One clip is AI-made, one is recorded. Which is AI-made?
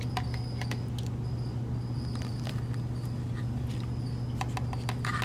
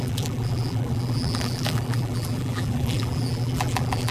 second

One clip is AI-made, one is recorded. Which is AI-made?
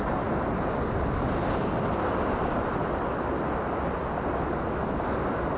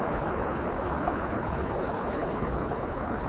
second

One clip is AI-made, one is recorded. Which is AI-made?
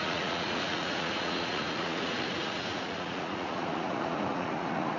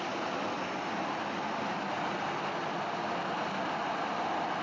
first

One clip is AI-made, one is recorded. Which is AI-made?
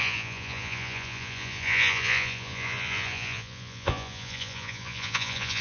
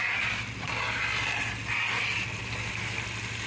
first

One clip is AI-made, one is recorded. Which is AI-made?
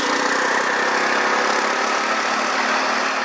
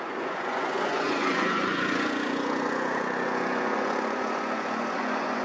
second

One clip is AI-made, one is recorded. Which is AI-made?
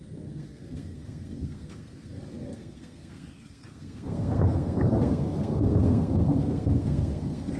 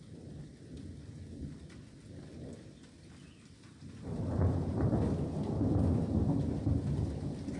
first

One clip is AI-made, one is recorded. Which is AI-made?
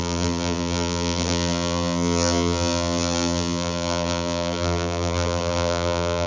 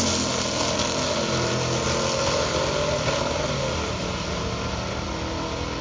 first